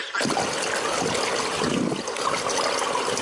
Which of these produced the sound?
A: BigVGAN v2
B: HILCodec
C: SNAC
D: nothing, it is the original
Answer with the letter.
D